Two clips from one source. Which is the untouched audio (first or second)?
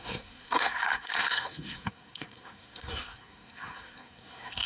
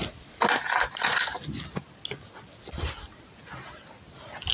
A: second